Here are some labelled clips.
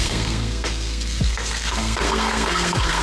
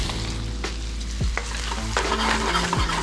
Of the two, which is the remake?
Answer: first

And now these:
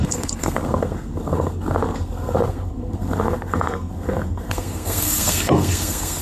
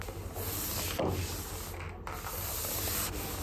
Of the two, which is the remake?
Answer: first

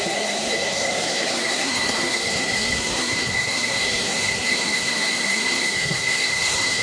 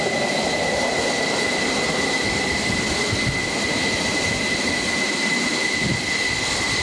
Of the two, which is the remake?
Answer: first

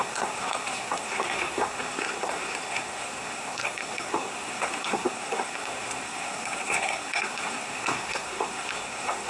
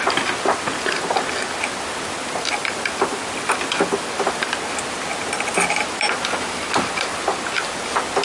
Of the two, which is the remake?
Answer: first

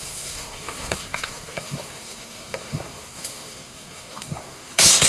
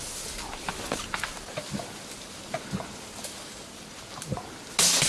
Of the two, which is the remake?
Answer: first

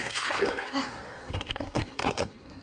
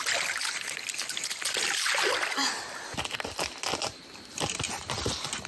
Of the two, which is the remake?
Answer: first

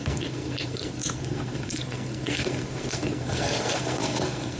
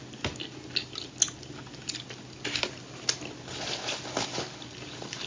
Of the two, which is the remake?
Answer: first